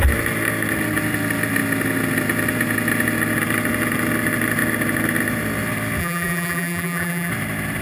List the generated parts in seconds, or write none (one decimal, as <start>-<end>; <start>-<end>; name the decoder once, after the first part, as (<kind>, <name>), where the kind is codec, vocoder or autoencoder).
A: 6.0-7.3 (vocoder, BigVGAN v2)